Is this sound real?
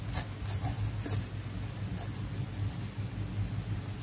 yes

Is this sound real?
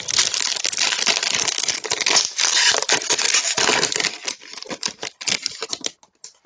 yes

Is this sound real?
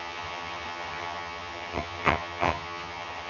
no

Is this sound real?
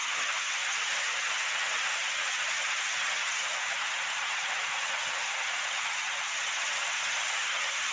no